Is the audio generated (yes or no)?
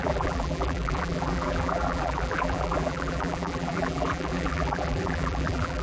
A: yes